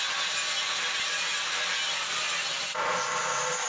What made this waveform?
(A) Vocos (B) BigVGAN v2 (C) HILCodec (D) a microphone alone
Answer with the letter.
D